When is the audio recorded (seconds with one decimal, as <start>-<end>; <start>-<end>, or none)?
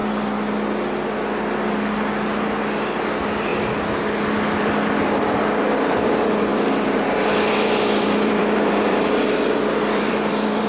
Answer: 0.0-6.5